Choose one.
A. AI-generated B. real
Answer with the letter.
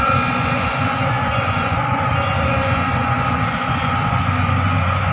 A